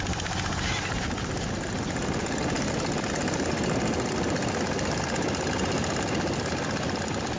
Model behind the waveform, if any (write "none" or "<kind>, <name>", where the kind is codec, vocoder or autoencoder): none